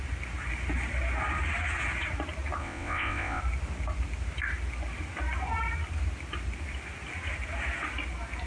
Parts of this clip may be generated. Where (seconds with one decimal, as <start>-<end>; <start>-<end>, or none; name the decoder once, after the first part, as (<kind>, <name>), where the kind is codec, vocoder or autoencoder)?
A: 2.6-3.4 (vocoder, WaveNeXt)